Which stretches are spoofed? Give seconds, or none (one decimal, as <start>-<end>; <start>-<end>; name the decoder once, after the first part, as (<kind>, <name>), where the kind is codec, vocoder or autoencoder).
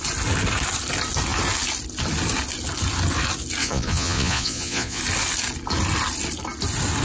3.6-5.0 (vocoder, Vocos)